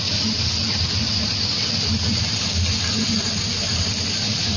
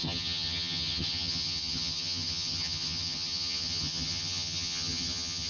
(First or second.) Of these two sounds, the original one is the first